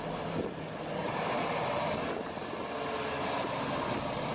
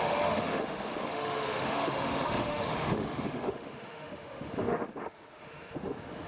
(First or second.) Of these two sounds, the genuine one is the first